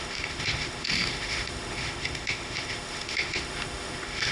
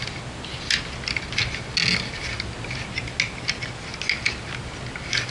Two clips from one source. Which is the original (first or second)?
second